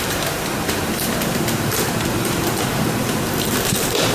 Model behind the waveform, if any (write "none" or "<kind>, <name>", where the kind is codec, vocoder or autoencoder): vocoder, BigVGAN v2